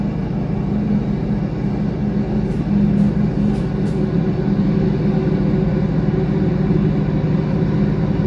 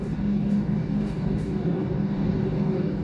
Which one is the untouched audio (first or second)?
first